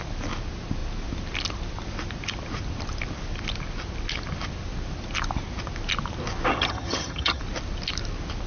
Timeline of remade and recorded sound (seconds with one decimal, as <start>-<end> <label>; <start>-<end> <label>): 0.0-6.5 recorded; 6.5-7.4 remade; 7.4-8.5 recorded